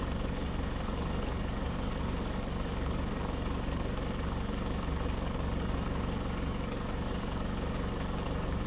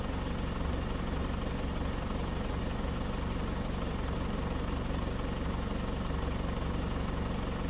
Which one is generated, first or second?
first